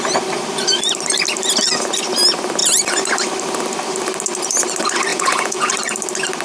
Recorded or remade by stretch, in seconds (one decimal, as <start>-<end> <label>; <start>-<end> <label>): 0.0-5.1 recorded; 5.1-5.7 remade; 5.7-6.4 recorded